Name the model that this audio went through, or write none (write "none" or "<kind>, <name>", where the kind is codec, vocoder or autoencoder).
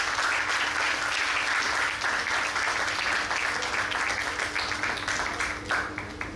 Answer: none